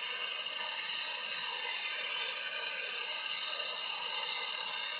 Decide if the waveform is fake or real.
real